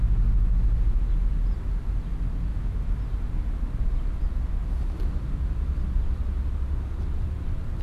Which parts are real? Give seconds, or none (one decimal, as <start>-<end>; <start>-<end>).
0.0-2.5; 3.0-7.8